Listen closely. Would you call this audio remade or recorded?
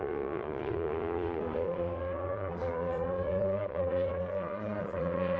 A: remade